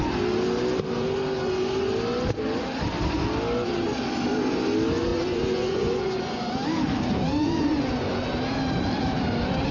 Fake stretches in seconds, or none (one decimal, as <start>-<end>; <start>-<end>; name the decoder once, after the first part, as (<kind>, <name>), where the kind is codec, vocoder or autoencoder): 5.1-6.4 (vocoder, Vocos); 7.4-8.1